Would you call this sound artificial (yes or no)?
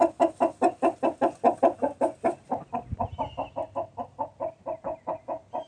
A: no